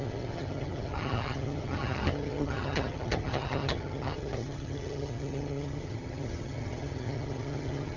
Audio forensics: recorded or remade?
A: remade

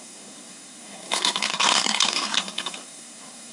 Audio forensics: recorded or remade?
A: remade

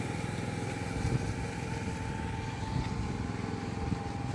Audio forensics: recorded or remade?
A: recorded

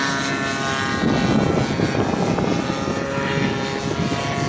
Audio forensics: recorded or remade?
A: recorded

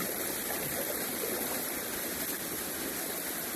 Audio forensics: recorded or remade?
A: recorded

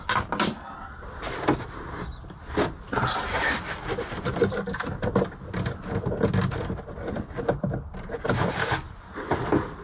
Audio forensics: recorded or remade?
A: recorded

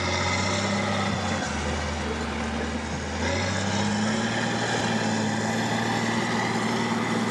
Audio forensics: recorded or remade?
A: recorded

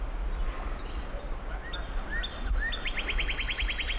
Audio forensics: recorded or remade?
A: recorded